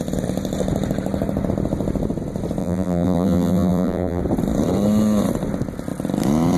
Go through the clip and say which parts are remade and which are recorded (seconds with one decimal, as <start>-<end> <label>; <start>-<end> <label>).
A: 0.0-2.6 recorded; 2.6-4.2 remade; 4.2-6.6 recorded